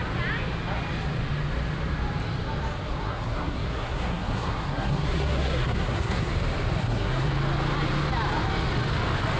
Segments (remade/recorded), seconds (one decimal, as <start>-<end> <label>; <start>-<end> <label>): 0.0-3.0 recorded; 3.0-6.3 remade; 6.3-6.8 recorded; 6.8-7.3 remade; 7.3-9.4 recorded